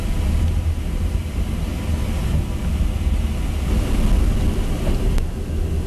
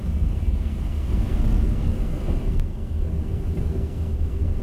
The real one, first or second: first